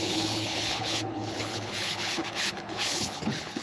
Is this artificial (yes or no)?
yes